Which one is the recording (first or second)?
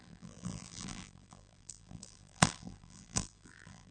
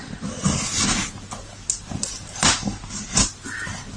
second